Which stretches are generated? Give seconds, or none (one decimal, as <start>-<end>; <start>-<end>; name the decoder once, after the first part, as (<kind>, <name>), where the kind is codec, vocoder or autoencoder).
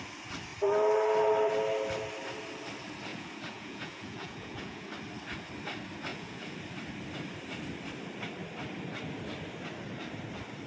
3.1-4.9 (vocoder, Vocos); 6.1-6.6